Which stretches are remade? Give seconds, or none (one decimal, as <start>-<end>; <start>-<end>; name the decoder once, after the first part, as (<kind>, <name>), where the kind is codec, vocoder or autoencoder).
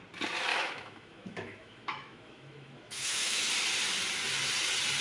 0.5-3.5 (autoencoder, DAC-VAE)